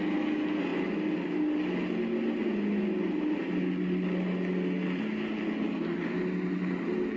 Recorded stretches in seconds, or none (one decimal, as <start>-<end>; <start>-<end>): 0.0-7.2

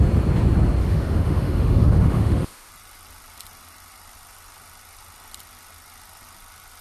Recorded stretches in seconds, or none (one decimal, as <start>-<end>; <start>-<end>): 0.0-0.8; 2.7-6.8

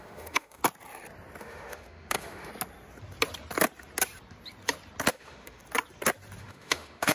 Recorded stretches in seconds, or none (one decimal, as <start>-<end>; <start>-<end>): 0.6-1.4; 2.5-5.1; 5.6-6.4

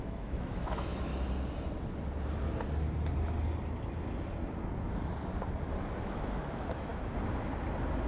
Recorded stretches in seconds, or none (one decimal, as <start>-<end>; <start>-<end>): 1.1-6.0; 6.9-8.1

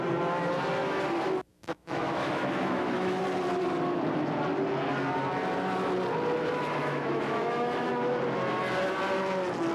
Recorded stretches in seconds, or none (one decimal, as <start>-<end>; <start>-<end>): 0.0-1.5; 3.2-6.8; 7.9-9.7

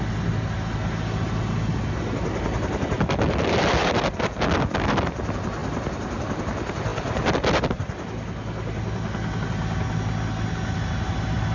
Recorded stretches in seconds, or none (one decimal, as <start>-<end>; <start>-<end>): 0.0-11.5